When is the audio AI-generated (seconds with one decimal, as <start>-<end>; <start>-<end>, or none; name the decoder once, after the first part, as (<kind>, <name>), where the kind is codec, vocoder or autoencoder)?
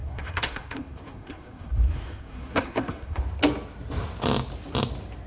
0.0-3.2 (codec, SNAC)